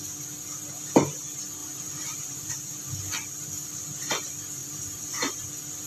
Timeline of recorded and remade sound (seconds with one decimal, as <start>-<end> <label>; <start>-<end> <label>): 0.0-1.6 recorded; 1.6-2.5 remade; 2.5-4.6 recorded; 4.6-5.4 remade; 5.4-5.9 recorded